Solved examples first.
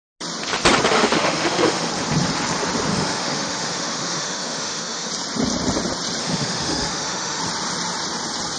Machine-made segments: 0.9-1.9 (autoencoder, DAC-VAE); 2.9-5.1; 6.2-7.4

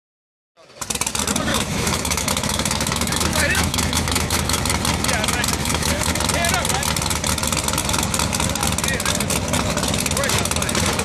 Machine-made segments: 1.5-4.6 (autoencoder, DAC-VAE); 5.6-6.1

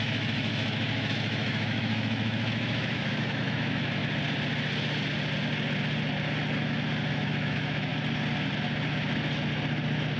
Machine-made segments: 0.0-4.0 (autoencoder, DAC-VAE); 7.1-7.9

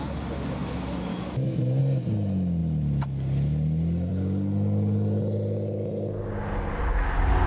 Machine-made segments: 1.1-1.8 (autoencoder, DAC-VAE)